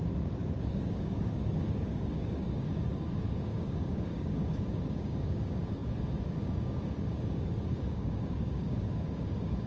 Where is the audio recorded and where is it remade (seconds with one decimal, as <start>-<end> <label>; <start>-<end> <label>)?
0.0-9.7 remade